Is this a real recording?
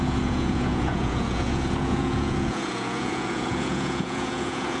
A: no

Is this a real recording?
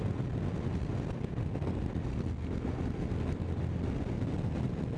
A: yes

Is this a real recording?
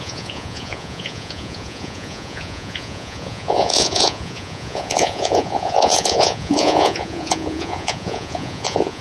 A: no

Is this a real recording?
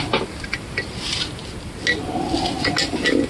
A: yes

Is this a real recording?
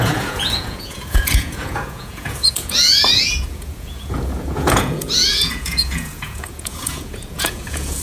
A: no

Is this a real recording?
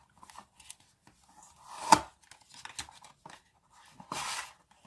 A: yes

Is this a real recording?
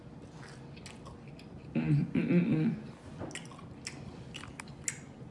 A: yes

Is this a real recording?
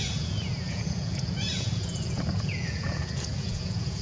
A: no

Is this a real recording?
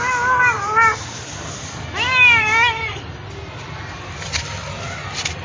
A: yes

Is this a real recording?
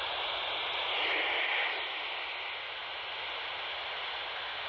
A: yes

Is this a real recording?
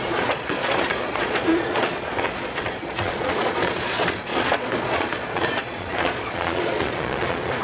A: no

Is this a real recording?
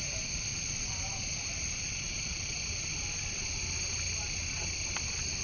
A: yes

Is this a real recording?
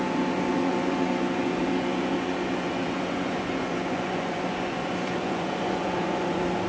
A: no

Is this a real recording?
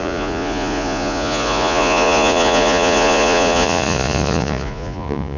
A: no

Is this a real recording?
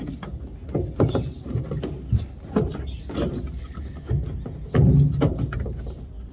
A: yes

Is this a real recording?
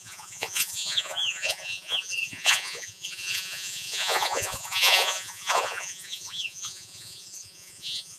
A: no